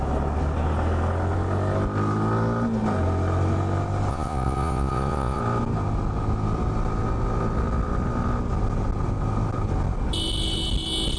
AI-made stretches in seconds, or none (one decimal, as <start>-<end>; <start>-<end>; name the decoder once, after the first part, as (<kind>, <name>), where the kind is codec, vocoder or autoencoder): 4.1-5.4 (vocoder, Vocos)